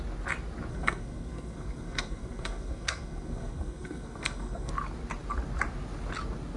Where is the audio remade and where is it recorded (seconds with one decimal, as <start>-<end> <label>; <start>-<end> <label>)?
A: 0.0-0.7 recorded; 0.7-4.7 remade; 4.7-6.6 recorded